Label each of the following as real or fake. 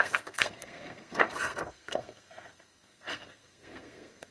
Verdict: fake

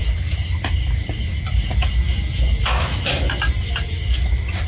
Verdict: real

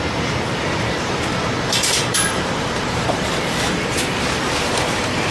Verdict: fake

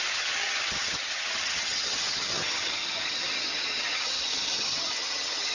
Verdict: fake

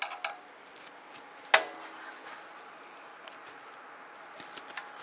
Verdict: real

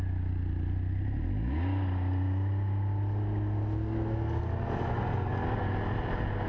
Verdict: real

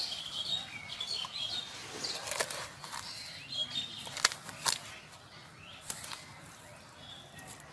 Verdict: real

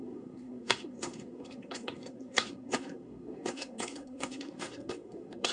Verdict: fake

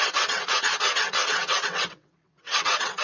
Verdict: fake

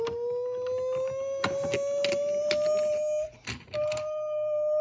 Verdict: real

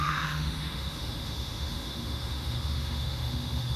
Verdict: fake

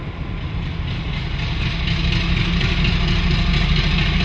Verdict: real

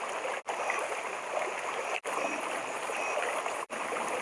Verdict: real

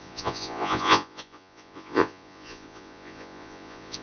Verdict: fake